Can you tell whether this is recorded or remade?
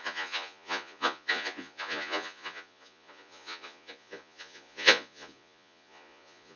remade